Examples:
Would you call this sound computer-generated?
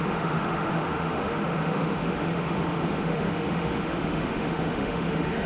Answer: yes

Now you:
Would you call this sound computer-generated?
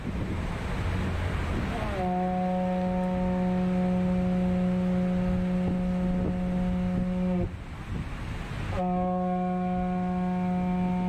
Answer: no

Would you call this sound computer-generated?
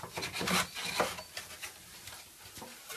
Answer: no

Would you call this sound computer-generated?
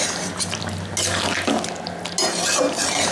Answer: no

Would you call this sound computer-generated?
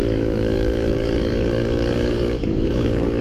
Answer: yes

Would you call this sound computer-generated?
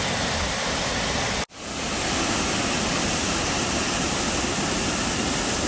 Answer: no